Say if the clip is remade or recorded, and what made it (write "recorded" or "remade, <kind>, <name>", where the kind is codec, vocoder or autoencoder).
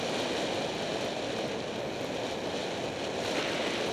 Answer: recorded